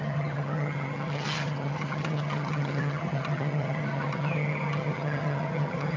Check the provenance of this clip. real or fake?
fake